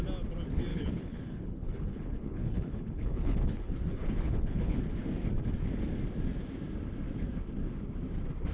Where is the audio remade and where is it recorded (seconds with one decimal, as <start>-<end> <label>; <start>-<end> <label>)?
0.0-0.7 recorded; 0.7-4.8 remade; 4.8-8.5 recorded